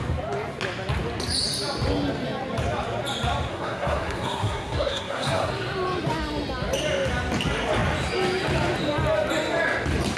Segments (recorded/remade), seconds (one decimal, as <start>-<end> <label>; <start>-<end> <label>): 0.0-3.5 recorded; 3.5-5.5 remade; 5.5-10.2 recorded